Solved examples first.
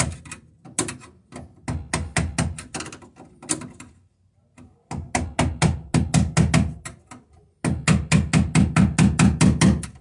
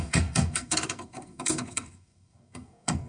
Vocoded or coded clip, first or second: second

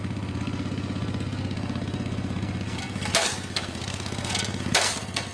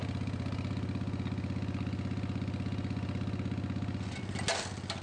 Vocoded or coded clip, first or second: first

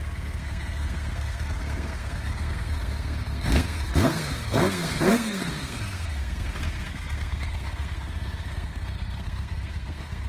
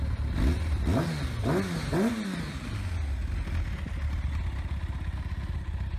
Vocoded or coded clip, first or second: first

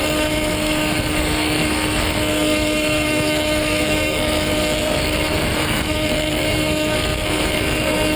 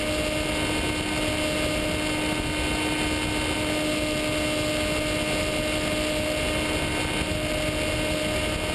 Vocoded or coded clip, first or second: first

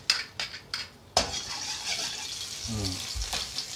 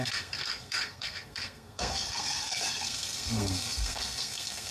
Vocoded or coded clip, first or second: second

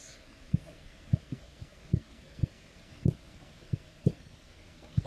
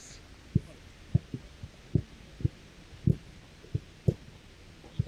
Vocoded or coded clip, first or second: first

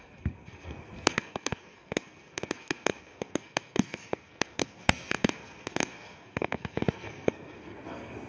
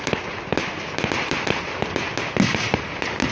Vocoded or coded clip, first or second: first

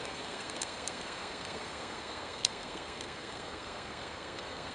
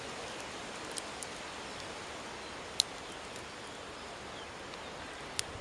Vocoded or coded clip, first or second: first